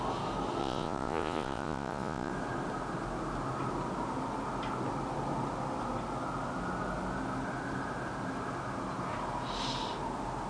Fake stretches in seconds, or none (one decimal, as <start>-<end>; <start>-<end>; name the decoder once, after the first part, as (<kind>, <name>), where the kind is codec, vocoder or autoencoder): 0.6-2.3 (vocoder, Vocos)